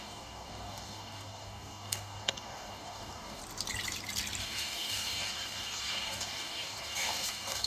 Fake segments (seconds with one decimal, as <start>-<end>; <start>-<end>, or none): 0.0-3.4; 4.4-7.7